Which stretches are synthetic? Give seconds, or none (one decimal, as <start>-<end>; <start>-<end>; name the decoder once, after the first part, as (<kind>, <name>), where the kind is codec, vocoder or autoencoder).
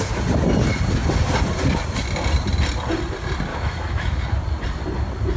3.5-4.2 (autoencoder, DAC-VAE)